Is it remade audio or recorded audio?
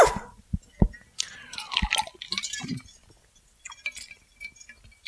recorded